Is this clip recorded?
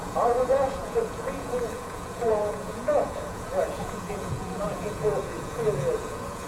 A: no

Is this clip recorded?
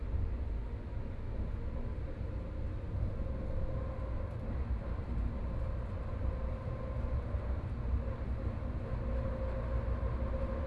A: yes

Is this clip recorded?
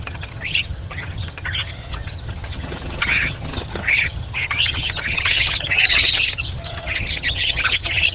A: no